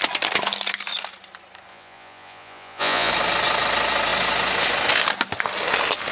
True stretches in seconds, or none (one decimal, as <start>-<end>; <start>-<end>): 0.0-1.7; 3.1-6.1